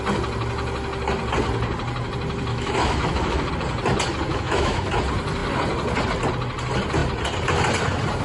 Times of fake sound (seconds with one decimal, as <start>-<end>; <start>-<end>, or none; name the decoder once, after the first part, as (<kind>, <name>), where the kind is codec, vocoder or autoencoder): 2.5-3.5 (autoencoder, DAC-VAE); 4.3-4.9